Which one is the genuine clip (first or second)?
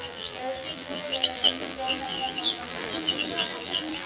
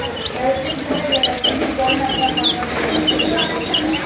second